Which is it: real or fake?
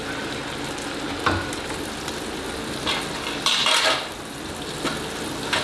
real